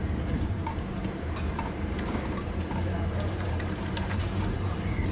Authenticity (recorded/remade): remade